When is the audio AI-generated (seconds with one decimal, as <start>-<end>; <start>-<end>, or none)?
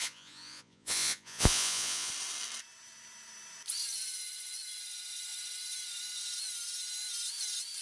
0.0-2.1